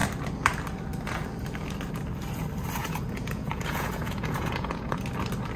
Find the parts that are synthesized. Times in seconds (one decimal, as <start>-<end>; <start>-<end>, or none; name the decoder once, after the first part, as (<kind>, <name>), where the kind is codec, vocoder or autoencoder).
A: 2.8-5.0 (vocoder, Vocos)